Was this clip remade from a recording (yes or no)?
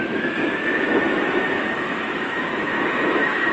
yes